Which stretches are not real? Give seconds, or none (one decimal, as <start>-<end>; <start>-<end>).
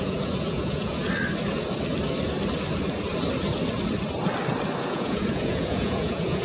0.0-1.0; 4.8-6.4